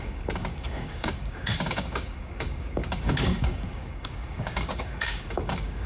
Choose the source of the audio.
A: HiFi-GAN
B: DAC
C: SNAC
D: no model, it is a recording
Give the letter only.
B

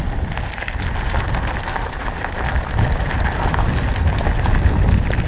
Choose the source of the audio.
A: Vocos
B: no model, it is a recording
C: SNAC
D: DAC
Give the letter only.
B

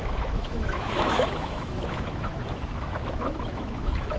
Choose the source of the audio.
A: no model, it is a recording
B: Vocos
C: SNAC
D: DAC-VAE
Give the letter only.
D